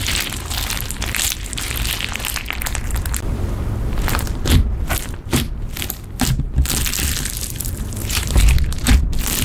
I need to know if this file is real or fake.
real